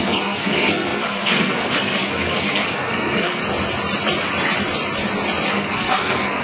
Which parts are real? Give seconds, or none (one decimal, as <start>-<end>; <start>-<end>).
3.4-5.5